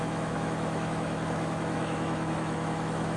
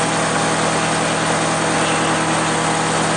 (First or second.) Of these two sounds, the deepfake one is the first